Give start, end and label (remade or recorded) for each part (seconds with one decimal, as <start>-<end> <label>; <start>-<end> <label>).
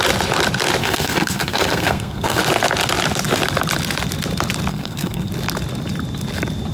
0.0-0.8 recorded; 0.8-2.4 remade; 2.4-4.7 recorded; 4.7-5.3 remade; 5.3-6.7 recorded